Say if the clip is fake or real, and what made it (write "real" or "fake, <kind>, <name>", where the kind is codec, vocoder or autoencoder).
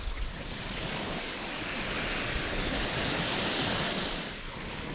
fake, codec, DAC